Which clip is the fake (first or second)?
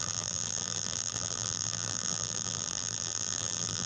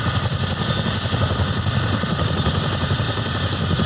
first